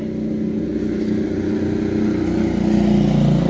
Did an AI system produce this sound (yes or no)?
no